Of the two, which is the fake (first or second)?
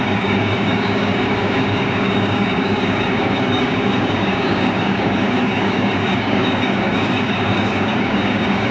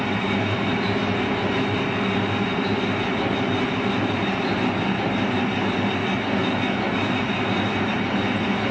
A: first